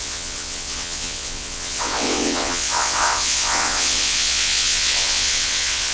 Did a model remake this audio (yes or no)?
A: yes